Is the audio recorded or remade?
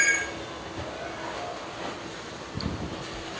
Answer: recorded